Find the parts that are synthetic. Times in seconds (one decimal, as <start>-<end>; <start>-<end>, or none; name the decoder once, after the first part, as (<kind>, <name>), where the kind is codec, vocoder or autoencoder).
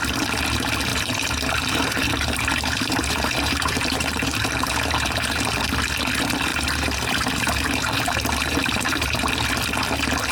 0.9-5.5 (vocoder, BigVGAN v2); 6.5-9.3